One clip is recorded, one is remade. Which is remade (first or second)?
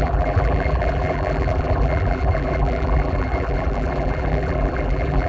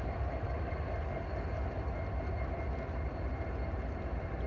first